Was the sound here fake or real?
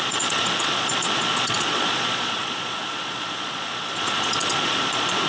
fake